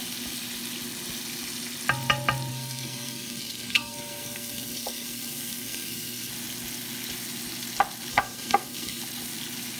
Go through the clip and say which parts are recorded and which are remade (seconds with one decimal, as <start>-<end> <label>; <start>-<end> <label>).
0.0-2.5 recorded; 2.5-6.3 remade; 6.3-8.1 recorded; 8.1-9.0 remade; 9.0-9.8 recorded